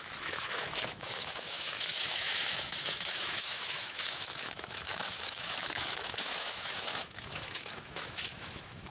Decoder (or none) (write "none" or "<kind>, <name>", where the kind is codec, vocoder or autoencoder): autoencoder, DAC-VAE